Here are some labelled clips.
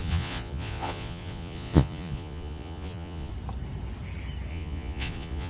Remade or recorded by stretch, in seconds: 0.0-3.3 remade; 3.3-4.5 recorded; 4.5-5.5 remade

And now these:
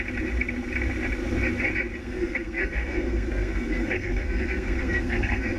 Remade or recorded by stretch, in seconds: 0.0-2.0 recorded; 2.0-5.6 remade